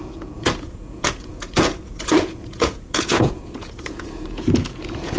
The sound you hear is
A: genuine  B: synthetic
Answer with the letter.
B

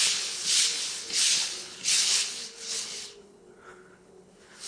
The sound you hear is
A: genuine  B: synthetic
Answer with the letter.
B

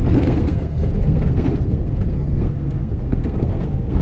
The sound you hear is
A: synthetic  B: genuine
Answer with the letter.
A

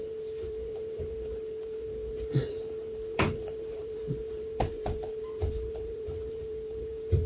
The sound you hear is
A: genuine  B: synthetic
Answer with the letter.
B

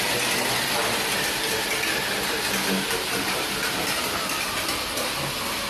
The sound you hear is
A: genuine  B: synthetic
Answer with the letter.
A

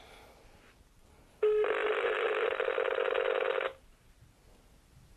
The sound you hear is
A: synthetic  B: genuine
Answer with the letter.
B